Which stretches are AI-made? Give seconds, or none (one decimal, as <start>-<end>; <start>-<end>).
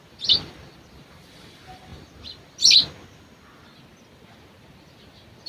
none